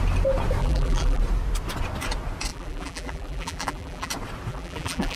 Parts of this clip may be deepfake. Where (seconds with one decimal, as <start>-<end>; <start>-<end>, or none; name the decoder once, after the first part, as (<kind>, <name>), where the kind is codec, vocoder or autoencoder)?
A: 0.6-1.2 (vocoder, BigVGAN v2); 2.5-4.1; 4.5-5.2